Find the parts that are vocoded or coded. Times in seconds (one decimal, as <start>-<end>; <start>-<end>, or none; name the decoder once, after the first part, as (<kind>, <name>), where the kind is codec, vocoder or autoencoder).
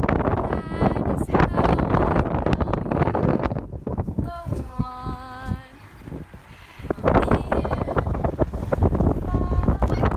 3.1-4.9 (codec, SNAC)